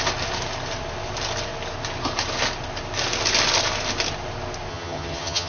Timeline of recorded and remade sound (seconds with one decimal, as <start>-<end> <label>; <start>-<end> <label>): 0.0-4.7 recorded; 4.7-5.5 remade